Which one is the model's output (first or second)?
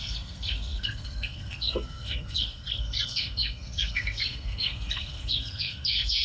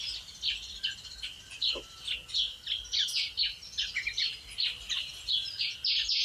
first